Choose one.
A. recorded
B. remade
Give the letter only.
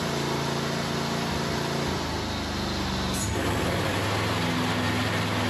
A